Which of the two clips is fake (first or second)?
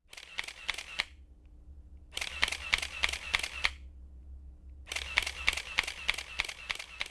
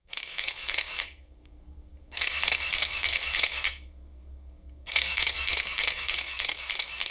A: second